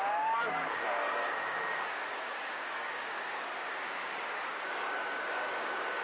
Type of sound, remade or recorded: remade